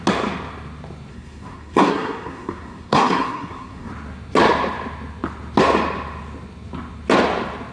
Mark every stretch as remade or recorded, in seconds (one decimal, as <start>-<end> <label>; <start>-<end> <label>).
0.0-1.1 recorded; 1.1-3.9 remade; 3.9-7.7 recorded